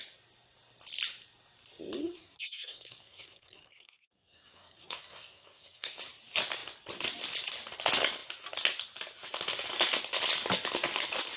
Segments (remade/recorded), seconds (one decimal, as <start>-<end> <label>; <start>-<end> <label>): 0.0-2.0 recorded; 2.0-6.0 remade; 6.0-11.4 recorded